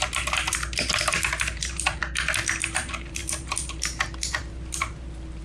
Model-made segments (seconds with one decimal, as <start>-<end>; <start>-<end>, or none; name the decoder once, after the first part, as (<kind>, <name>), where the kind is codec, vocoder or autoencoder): 0.0-2.0 (vocoder, BigVGAN v2); 2.8-5.4